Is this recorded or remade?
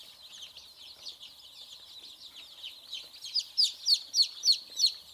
recorded